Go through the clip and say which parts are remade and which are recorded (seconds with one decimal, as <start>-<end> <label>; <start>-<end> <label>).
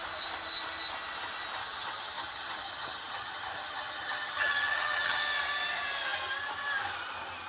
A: 0.0-1.6 recorded; 1.6-5.2 remade; 5.2-7.5 recorded